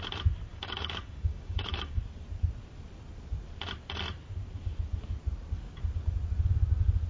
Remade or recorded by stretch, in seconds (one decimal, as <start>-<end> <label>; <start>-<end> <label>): 0.0-0.5 recorded; 0.5-2.0 remade; 2.0-7.1 recorded